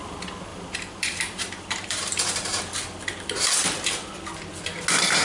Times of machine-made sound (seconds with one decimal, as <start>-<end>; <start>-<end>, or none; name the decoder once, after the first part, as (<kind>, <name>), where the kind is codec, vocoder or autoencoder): 0.5-2.6 (vocoder, BigVGAN v2)